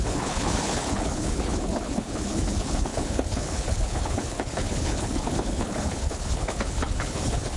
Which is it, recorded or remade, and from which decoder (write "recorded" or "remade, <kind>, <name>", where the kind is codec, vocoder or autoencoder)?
remade, codec, HILCodec